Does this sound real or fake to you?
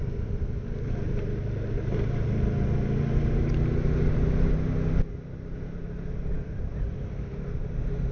real